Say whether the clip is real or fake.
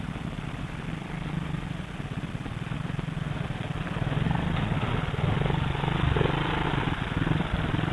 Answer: fake